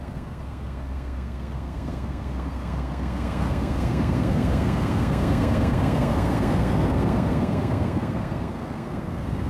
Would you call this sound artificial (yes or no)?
yes